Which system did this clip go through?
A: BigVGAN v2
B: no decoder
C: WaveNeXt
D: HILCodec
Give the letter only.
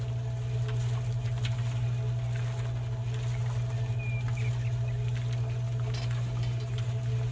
B